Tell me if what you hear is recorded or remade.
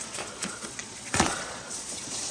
remade